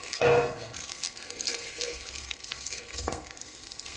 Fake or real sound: fake